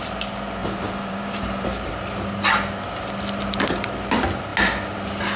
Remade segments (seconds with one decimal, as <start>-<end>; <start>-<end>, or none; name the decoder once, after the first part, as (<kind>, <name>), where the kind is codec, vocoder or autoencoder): 0.6-1.9 (vocoder, BigVGAN v2)